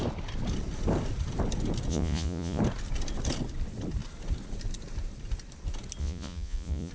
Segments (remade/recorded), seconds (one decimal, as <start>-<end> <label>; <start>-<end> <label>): 0.0-1.9 recorded; 1.9-2.6 remade; 2.6-6.0 recorded; 6.0-6.9 remade